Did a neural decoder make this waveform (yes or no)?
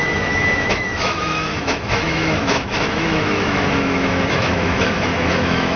yes